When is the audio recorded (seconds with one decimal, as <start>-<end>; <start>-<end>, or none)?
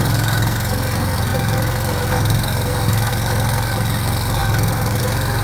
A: none